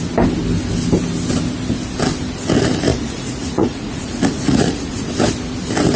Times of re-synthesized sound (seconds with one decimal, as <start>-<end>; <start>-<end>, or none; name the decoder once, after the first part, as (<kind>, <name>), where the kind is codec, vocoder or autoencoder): 2.9-5.1 (vocoder, Vocos)

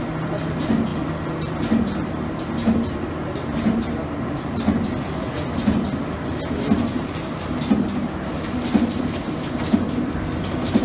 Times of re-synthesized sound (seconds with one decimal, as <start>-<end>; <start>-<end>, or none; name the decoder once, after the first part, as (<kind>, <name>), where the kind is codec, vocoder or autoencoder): none

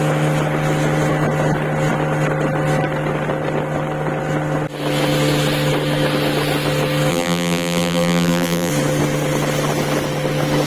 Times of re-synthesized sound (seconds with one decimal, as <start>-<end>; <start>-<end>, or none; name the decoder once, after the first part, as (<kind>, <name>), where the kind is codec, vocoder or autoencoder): 7.1-8.7 (vocoder, BigVGAN v2)

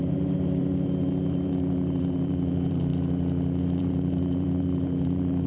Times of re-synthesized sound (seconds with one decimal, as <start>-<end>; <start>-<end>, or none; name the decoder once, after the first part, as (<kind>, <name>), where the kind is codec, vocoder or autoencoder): 0.0-2.9 (vocoder, BigVGAN v2); 3.8-5.5

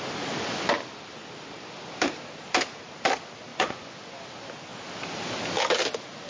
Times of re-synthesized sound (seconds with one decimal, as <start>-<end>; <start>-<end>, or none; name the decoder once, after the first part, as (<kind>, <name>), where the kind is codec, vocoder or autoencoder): 3.5-4.1 (vocoder, Vocos)